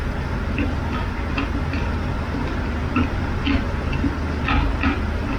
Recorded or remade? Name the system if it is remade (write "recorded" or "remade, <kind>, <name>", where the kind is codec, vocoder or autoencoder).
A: recorded